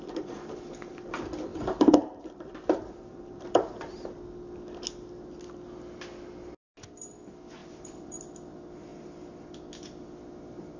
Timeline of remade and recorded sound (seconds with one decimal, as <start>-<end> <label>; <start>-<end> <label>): 0.0-1.5 recorded; 1.5-3.7 remade; 3.7-7.6 recorded; 7.6-8.2 remade; 8.2-10.8 recorded